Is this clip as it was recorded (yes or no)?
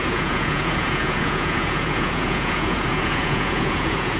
no